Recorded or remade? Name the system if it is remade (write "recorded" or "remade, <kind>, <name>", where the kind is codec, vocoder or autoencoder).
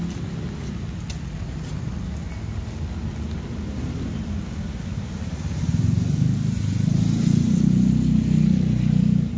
recorded